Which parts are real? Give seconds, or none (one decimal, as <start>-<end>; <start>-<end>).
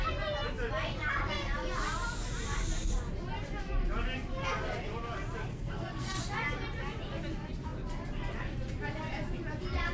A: 0.0-5.5; 6.2-9.9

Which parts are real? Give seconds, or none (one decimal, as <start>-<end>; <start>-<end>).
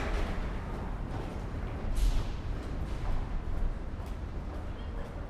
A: 0.0-5.3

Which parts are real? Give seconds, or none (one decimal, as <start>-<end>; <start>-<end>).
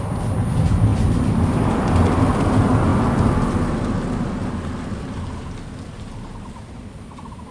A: 0.0-7.5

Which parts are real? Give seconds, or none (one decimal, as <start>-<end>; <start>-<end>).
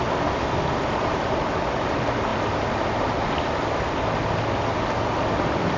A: 0.0-5.8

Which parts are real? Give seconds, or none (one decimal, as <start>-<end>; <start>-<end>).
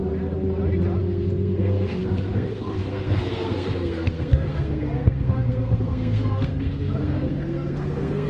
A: 0.0-1.0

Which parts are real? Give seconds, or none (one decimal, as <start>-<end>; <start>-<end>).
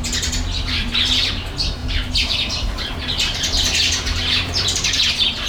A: 0.0-1.8; 5.1-5.5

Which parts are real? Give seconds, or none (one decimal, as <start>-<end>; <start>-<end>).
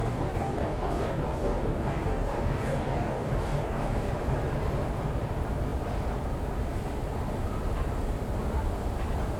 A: 4.1-9.4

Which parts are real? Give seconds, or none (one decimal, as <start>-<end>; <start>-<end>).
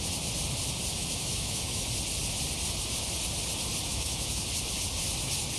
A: 0.0-0.9; 1.8-3.9; 4.4-5.6